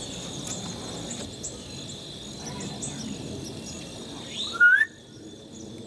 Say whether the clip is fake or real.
real